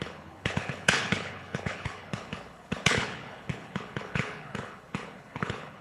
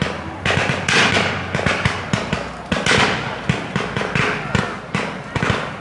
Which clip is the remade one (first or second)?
first